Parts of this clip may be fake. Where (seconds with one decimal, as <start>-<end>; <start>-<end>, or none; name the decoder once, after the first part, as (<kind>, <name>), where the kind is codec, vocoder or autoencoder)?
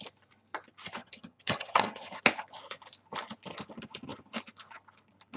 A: 1.0-2.2 (vocoder, HiFi-GAN)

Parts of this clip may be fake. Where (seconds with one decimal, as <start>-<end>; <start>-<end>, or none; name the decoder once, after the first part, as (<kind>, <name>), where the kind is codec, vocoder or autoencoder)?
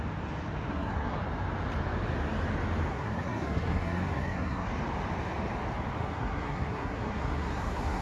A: 0.7-1.2 (codec, SNAC); 2.9-4.7; 6.0-8.0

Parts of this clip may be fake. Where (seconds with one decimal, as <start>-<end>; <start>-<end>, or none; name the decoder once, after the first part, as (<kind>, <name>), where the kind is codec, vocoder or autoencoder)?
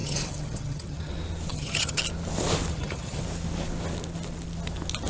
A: 0.0-1.1 (vocoder, HiFi-GAN); 1.5-2.0; 2.7-3.2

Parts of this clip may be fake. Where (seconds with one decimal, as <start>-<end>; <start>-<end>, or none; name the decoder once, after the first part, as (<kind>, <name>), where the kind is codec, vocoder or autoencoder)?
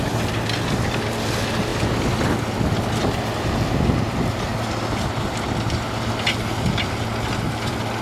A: none